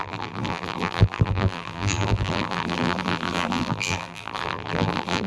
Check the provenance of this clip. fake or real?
fake